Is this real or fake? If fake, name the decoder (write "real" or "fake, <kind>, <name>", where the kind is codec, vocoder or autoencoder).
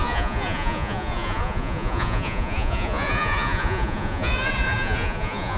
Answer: fake, vocoder, Vocos